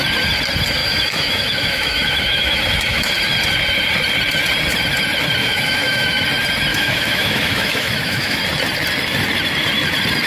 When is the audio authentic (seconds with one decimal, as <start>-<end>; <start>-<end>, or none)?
0.0-0.8; 3.1-5.4; 6.2-6.7; 8.4-10.3